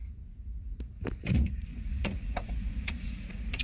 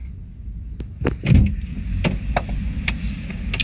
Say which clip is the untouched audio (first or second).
second